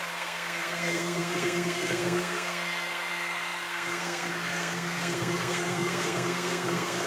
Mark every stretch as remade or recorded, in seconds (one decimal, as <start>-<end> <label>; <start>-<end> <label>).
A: 0.0-7.1 remade